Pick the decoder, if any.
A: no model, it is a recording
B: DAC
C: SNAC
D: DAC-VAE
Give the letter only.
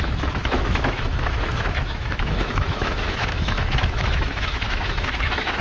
D